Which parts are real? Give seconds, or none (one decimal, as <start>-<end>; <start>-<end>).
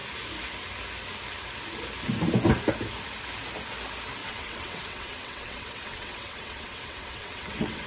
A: 0.0-4.2